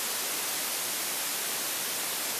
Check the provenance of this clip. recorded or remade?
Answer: recorded